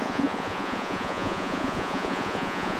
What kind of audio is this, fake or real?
fake